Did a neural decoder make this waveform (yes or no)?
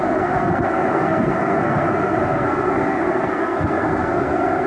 yes